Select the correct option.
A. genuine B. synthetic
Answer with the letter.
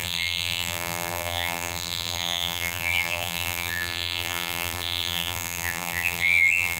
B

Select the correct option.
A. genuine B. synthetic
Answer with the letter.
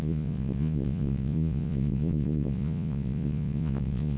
B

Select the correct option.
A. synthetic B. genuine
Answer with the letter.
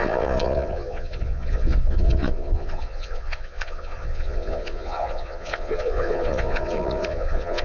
A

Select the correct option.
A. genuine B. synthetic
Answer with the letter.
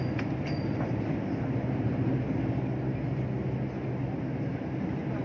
A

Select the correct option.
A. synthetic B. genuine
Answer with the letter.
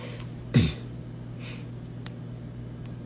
B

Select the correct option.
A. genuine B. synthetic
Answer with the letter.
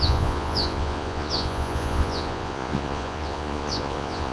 B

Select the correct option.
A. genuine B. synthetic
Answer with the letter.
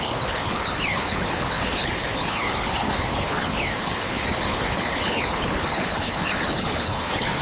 B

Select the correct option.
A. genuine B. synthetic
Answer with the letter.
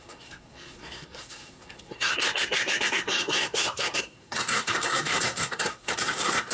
B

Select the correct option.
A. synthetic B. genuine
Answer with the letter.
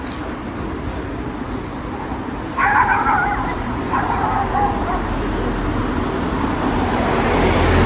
B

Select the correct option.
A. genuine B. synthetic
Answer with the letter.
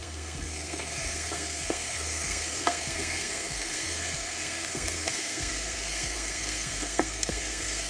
B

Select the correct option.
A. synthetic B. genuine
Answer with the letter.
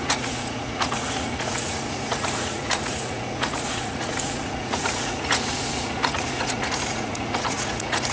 A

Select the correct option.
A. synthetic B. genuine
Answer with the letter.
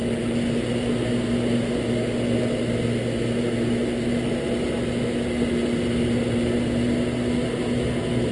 B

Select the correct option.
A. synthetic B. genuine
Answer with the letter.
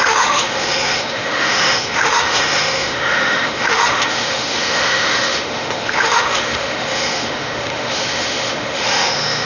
A